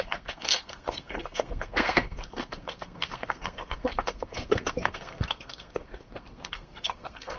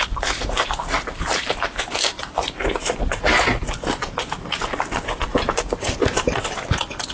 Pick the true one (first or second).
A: second